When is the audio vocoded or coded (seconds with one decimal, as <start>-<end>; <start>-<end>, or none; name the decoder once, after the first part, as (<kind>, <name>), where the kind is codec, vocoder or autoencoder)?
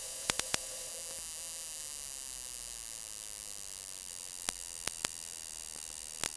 0.0-0.9 (vocoder, Vocos)